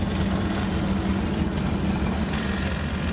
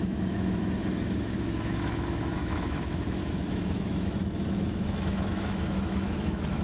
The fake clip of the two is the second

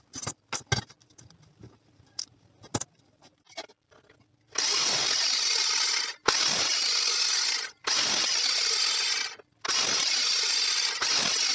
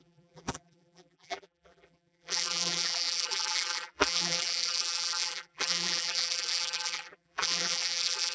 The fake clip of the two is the second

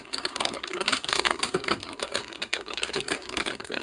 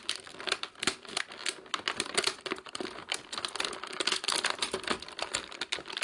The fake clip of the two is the first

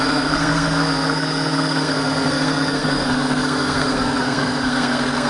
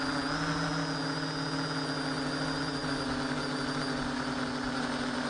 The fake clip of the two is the first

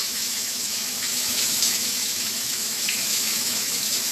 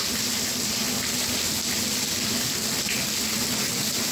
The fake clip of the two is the first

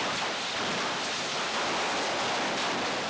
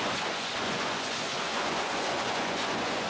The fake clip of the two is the second